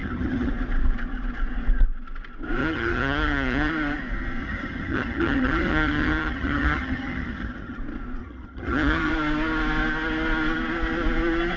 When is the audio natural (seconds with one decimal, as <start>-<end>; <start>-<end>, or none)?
0.5-2.6; 3.7-4.4; 7.8-8.2; 9.1-11.6